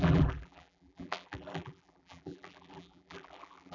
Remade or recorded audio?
remade